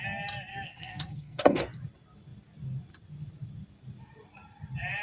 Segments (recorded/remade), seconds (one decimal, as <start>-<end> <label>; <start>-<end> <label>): 0.0-0.5 recorded; 0.5-1.6 remade; 1.6-5.0 recorded